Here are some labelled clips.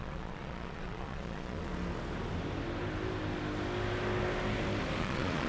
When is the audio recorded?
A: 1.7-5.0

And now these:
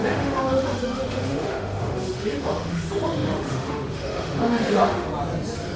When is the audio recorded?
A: 5.1-5.8

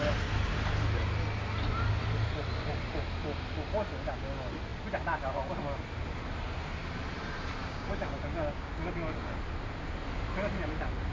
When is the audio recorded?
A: 0.0-7.6; 9.3-11.1

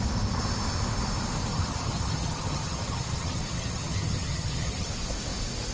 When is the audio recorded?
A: 0.0-1.5; 4.9-5.7

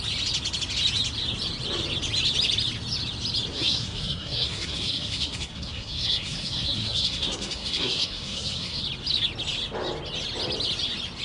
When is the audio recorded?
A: 0.0-3.5; 8.8-11.2